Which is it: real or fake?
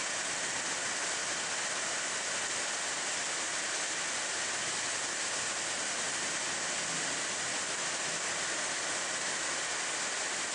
real